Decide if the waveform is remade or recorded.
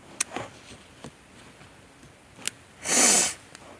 recorded